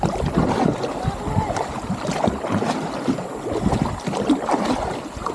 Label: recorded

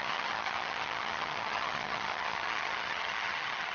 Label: remade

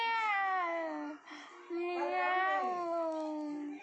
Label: recorded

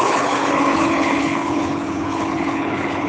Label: remade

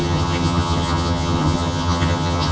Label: remade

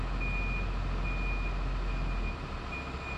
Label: recorded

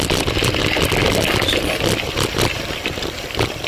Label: recorded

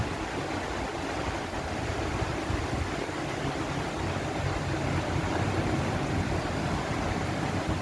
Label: recorded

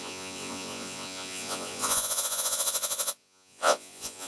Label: remade